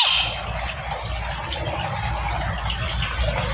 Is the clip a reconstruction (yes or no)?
no